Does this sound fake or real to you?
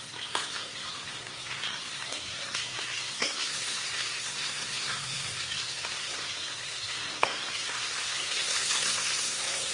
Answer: fake